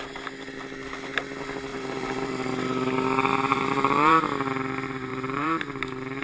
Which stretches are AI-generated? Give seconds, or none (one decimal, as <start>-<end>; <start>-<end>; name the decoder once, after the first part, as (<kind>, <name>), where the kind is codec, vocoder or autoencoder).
1.7-2.3 (vocoder, BigVGAN v2); 3.5-4.2; 5.1-5.6